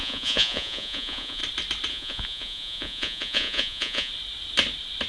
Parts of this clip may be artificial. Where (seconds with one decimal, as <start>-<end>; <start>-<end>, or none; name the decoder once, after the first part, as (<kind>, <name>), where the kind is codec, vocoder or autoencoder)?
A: 0.0-1.4 (vocoder, Vocos); 1.9-4.1